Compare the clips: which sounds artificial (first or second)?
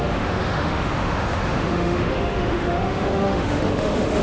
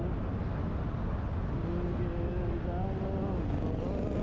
first